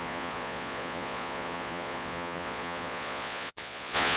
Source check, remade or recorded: remade